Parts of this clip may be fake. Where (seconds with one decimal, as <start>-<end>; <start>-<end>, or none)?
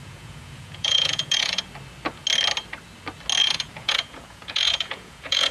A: 0.0-1.6; 3.4-5.5